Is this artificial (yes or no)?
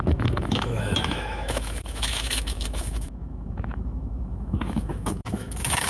yes